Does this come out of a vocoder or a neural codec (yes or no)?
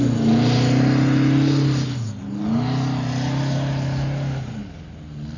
no